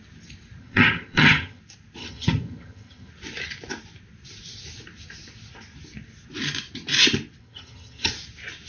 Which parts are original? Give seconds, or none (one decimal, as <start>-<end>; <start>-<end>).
0.0-0.6; 1.6-2.0; 3.1-7.4; 8.1-8.7